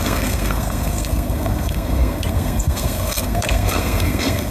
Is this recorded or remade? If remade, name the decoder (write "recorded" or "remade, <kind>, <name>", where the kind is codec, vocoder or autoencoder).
remade, codec, SNAC